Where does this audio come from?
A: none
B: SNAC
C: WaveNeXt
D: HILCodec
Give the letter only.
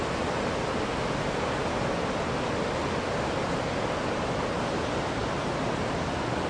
A